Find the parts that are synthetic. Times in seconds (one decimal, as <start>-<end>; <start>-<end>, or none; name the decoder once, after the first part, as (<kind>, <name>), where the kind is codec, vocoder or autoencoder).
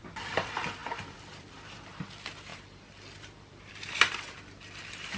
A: 0.0-5.2 (vocoder, BigVGAN v2)